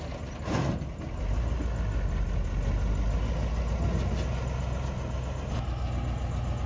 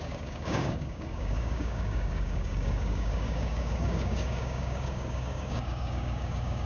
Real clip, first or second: first